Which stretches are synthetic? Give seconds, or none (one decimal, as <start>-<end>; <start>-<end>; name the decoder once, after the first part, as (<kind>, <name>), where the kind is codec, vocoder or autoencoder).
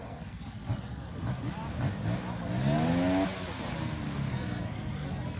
0.0-1.1 (codec, SNAC); 4.3-5.4